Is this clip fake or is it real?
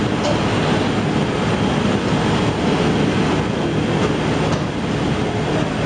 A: real